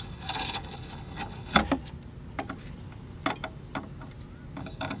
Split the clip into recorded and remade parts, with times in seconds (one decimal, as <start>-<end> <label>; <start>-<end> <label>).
0.0-1.6 remade; 1.6-4.6 recorded; 4.6-5.0 remade